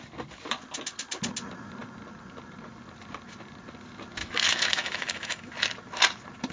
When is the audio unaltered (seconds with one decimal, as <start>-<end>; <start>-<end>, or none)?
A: 0.0-4.2; 5.5-6.5